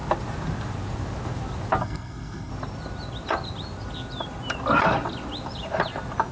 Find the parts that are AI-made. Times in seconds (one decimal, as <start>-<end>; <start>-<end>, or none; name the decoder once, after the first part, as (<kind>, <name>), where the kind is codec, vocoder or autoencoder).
1.8-2.5 (codec, SNAC)